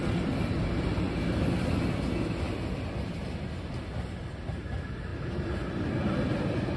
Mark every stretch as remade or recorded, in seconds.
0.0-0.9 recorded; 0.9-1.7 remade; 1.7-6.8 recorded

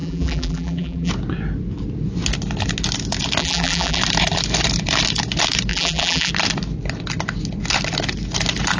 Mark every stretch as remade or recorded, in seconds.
0.0-1.1 remade; 1.1-3.4 recorded; 3.4-4.0 remade; 4.0-5.7 recorded; 5.7-6.3 remade; 6.3-8.8 recorded

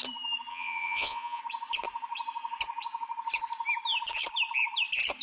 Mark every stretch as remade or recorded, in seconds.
0.0-0.5 recorded; 0.5-1.4 remade; 1.4-5.2 recorded

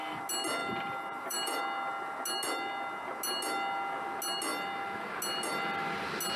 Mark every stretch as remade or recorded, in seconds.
0.0-0.6 recorded; 0.6-1.6 remade; 1.6-6.4 recorded

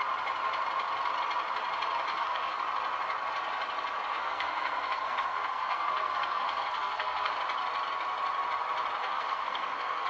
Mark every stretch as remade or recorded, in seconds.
0.0-2.1 recorded; 2.1-2.6 remade; 2.6-4.1 recorded; 4.1-7.3 remade; 7.3-9.0 recorded; 9.0-10.1 remade